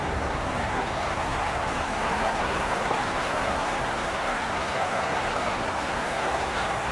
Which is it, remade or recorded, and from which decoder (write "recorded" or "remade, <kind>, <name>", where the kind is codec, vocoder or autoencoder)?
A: remade, codec, SNAC